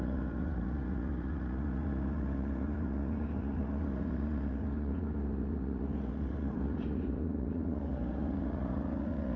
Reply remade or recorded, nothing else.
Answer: remade